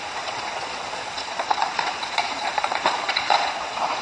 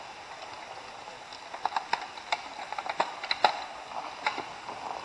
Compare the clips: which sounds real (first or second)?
second